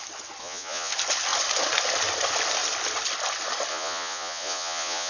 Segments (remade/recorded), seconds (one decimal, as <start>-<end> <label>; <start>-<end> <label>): 0.0-0.4 recorded; 0.4-0.9 remade; 0.9-3.7 recorded; 3.7-5.1 remade